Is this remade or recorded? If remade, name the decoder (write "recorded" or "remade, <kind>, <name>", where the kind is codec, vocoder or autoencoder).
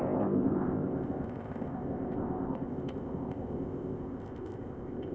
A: remade, codec, ZipCodec